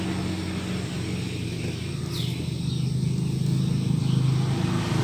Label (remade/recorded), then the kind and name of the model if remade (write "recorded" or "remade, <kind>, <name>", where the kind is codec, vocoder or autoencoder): recorded